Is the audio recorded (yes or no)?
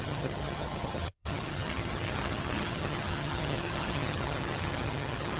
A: no